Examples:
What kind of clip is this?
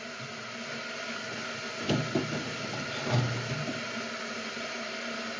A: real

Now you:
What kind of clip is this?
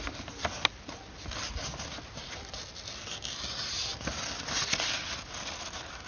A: real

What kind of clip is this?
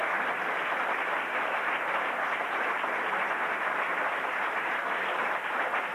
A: real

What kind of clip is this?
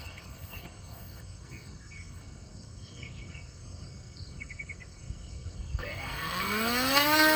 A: fake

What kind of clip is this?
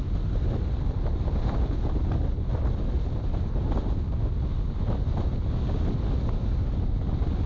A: real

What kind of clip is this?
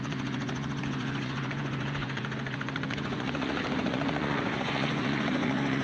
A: fake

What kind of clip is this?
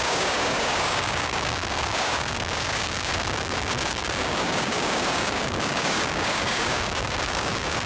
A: fake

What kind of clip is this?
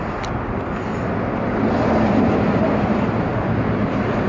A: real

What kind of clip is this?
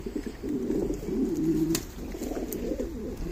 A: real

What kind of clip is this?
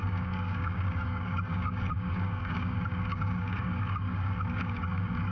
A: fake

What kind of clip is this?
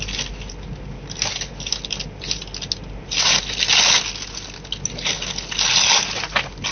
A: real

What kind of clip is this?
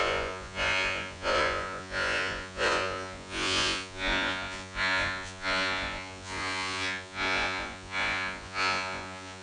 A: fake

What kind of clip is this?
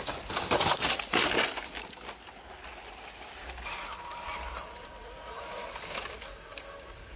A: real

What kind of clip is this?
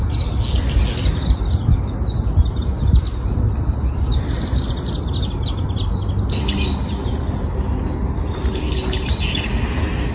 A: real